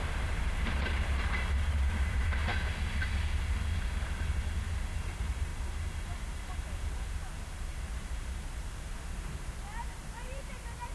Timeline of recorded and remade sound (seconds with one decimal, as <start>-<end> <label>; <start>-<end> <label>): 0.0-2.5 remade; 2.5-5.0 recorded; 5.0-5.5 remade; 5.5-7.5 recorded; 7.5-10.9 remade

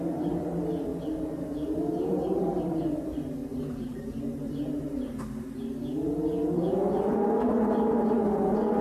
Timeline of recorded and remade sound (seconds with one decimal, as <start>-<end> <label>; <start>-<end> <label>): 0.0-2.1 recorded; 2.1-2.8 remade; 2.8-3.4 recorded; 3.4-5.2 remade; 5.2-8.8 recorded

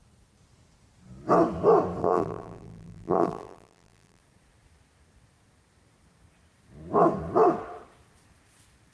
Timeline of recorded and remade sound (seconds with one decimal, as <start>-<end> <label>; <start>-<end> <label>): 0.0-2.0 recorded; 2.0-4.2 remade; 4.2-8.9 recorded